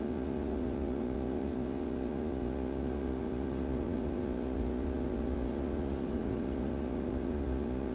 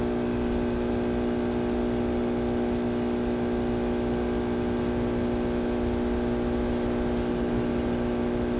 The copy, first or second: first